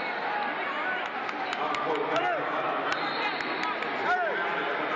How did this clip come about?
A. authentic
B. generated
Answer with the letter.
A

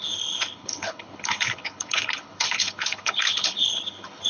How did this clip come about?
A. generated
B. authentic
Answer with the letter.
A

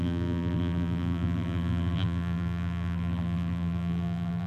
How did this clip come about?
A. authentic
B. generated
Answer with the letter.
B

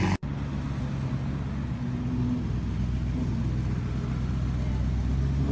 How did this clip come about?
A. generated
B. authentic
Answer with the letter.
B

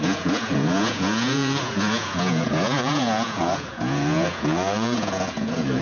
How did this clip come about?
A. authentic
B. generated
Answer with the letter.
B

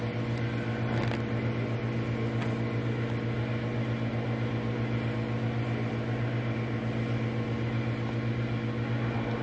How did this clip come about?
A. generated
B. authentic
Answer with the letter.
B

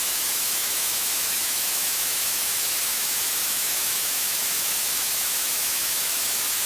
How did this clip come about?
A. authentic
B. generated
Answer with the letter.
B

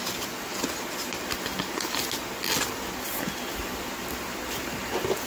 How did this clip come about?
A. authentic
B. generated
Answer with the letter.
A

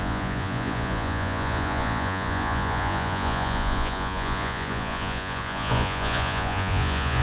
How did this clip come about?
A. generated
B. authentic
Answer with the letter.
A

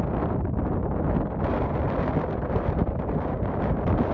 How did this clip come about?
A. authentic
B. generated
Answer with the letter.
A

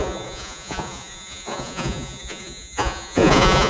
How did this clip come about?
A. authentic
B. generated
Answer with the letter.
B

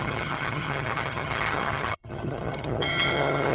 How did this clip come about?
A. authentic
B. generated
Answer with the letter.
B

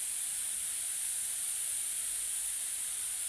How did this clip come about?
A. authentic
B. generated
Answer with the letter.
B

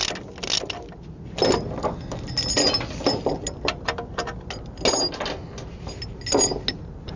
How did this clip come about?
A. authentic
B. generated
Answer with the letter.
A